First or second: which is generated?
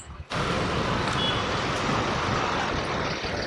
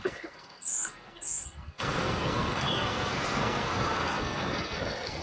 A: second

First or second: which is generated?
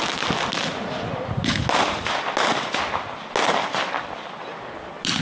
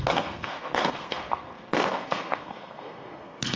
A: second